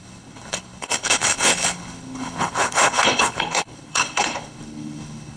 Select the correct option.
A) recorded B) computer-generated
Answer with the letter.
B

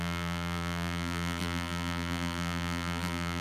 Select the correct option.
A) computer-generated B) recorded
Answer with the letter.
A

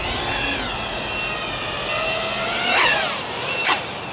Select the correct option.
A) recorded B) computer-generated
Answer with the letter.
A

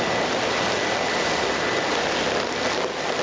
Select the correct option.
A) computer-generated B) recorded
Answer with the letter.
B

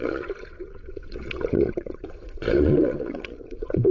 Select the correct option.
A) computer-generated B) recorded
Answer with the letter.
A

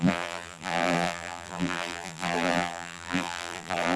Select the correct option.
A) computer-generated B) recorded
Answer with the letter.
A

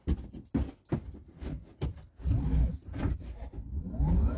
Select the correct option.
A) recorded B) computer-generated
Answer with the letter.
A